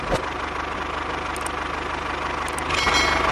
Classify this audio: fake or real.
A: real